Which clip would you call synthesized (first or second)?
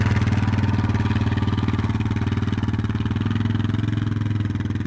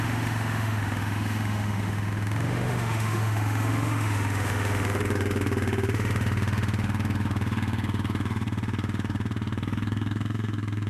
second